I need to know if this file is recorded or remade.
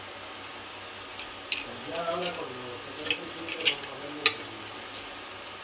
recorded